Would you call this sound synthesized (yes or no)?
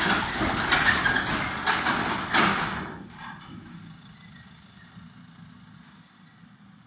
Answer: no